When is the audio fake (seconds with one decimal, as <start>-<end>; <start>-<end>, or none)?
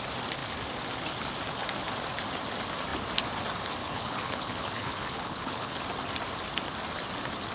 3.8-5.8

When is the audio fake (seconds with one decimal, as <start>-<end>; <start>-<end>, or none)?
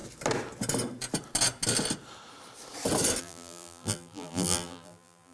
3.2-5.3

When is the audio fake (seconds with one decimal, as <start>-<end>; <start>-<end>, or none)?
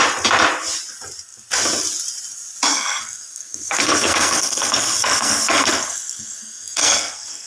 2.7-7.5